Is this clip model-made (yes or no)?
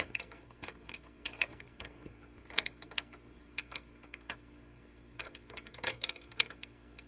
yes